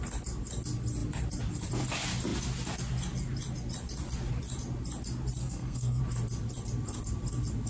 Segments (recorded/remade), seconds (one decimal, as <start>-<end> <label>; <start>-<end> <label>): 0.0-5.4 recorded; 5.4-6.0 remade; 6.0-7.7 recorded